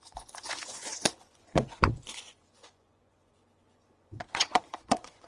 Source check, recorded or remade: remade